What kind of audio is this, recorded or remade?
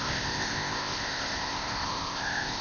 remade